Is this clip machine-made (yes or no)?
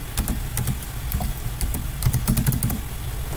no